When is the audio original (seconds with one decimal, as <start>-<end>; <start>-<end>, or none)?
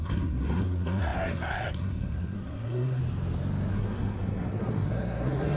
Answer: 3.0-3.7